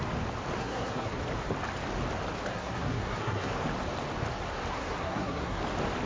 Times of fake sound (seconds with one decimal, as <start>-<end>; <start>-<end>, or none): 0.6-1.2; 2.5-3.5; 4.7-5.6